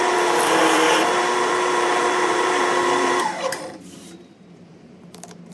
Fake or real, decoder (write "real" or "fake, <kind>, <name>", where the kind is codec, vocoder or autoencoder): fake, vocoder, BigVGAN v2